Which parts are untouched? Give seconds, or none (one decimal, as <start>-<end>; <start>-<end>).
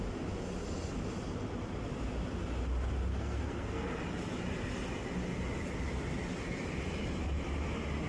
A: 0.0-3.1; 3.9-8.1